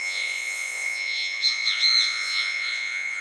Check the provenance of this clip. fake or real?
fake